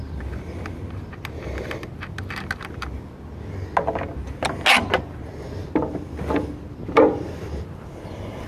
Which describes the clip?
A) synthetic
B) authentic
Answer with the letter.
B